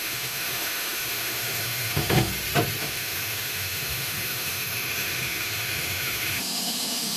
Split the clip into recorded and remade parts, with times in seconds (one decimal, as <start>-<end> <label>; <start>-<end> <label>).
0.0-2.3 remade; 2.3-2.8 recorded; 2.8-7.2 remade